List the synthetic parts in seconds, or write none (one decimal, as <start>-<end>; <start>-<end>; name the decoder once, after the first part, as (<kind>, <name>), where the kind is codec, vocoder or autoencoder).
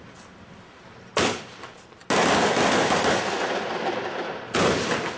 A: none